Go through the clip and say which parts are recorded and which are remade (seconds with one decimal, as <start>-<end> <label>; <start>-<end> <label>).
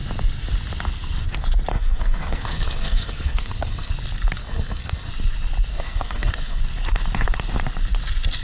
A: 0.0-1.7 recorded; 1.7-3.9 remade; 3.9-4.4 recorded; 4.4-5.1 remade; 5.1-5.7 recorded; 5.7-6.6 remade; 6.6-8.4 recorded